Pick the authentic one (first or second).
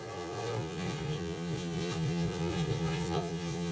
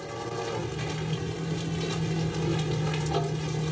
second